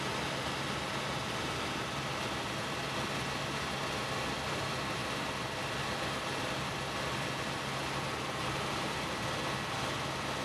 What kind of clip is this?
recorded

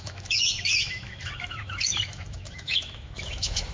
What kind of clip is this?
remade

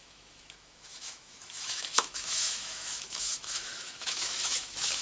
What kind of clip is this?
remade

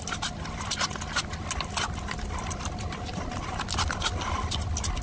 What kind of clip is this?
recorded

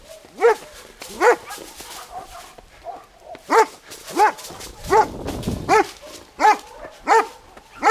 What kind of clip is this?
recorded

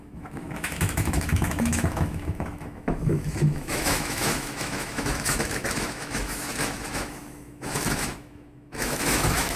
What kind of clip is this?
remade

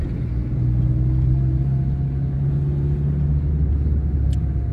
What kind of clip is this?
recorded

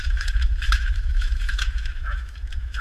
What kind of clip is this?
remade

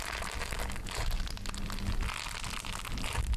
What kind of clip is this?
recorded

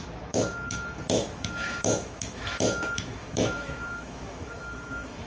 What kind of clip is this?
remade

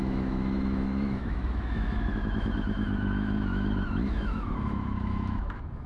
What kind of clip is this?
remade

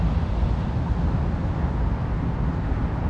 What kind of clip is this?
recorded